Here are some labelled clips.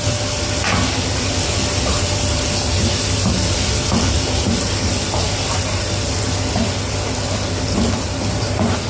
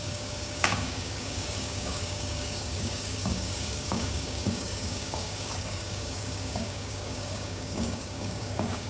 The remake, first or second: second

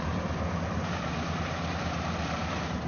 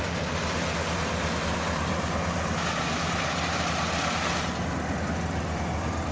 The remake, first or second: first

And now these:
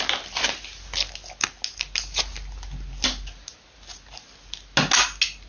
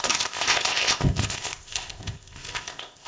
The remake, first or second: second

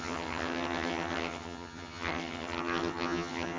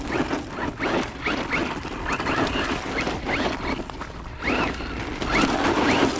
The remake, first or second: first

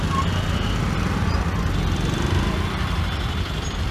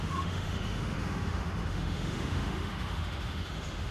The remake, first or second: second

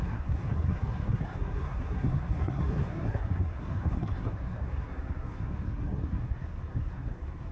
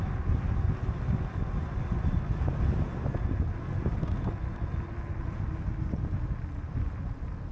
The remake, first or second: first